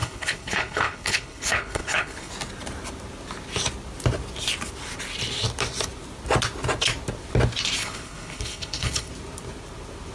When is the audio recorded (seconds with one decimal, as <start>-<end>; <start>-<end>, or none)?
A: 2.3-7.8; 9.1-10.1